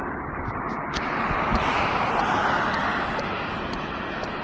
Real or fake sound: real